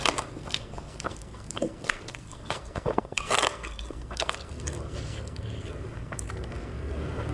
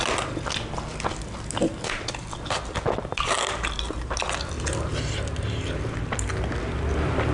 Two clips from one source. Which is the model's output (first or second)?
first